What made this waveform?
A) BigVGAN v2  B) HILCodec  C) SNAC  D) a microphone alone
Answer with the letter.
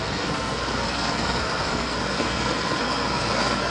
C